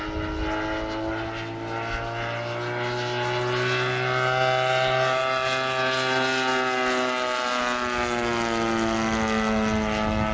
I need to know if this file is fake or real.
real